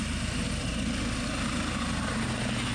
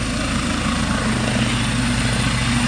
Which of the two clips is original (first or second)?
second